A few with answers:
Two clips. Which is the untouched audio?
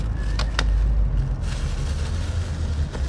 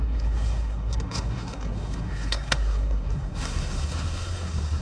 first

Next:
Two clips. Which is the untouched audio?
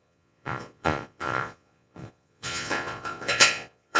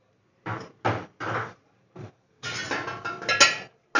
second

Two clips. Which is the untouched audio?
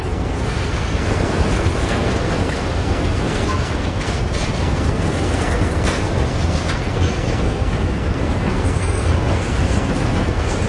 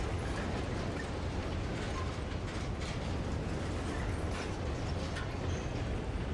second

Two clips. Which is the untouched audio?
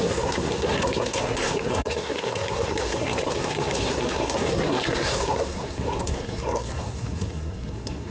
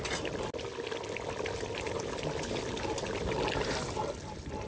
second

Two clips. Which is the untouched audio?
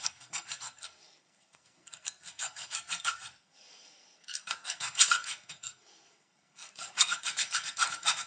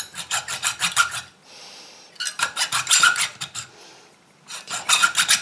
second